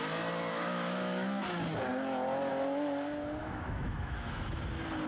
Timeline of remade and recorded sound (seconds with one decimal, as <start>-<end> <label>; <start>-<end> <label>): 0.0-0.5 recorded; 0.5-1.4 remade; 1.4-3.4 recorded; 3.4-4.6 remade; 4.6-5.1 recorded